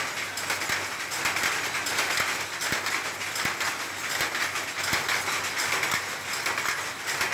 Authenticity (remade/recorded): recorded